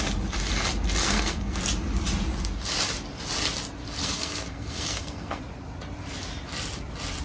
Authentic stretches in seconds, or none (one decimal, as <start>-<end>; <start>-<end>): 0.0-1.0; 1.6-4.0; 5.4-7.2